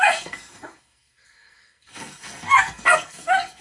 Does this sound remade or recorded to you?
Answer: remade